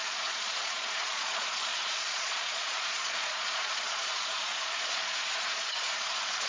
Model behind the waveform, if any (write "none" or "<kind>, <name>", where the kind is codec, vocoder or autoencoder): vocoder, Vocos